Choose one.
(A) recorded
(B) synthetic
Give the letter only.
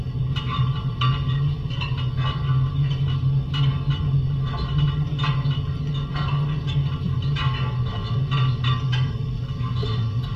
A